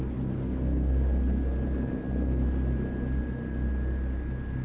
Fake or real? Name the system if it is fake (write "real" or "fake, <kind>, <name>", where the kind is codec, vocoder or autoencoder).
real